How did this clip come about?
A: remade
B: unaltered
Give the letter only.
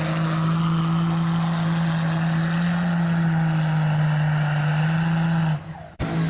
B